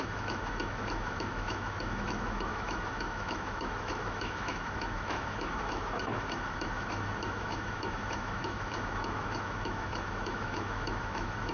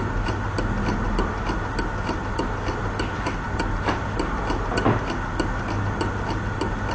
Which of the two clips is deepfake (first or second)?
first